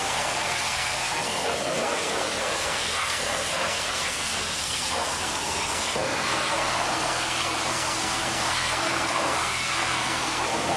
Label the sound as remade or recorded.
remade